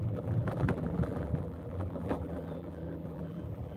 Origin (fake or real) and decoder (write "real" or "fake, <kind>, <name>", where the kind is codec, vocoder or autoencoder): fake, vocoder, BigVGAN v2